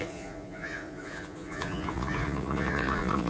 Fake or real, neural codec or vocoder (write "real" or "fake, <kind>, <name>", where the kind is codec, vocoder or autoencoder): fake, vocoder, Vocos